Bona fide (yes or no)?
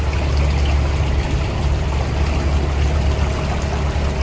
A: yes